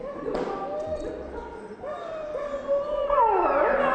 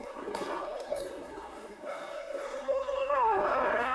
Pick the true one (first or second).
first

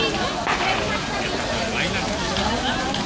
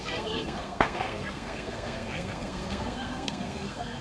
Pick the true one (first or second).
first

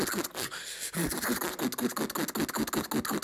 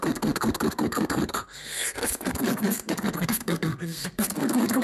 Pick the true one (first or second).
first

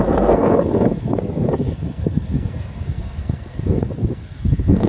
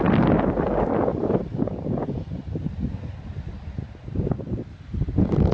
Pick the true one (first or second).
second